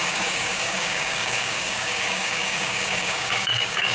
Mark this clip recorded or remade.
remade